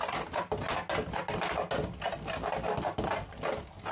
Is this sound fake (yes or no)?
no